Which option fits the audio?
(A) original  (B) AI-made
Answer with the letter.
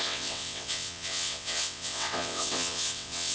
B